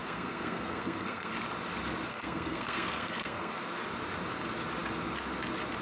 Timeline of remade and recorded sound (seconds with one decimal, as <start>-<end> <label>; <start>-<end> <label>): 0.0-1.3 remade; 1.3-2.1 recorded; 2.1-3.5 remade; 3.5-5.8 recorded